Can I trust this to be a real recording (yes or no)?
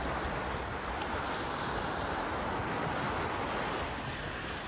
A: yes